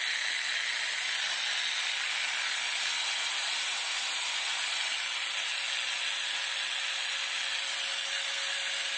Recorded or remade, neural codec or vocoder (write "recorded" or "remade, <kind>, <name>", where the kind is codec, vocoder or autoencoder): recorded